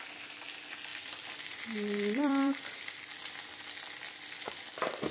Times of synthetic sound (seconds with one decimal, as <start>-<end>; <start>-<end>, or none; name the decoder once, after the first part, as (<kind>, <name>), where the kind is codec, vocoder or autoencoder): 0.9-3.6 (vocoder, BigVGAN v2)